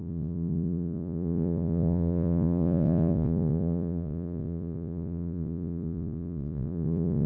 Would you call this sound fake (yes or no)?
yes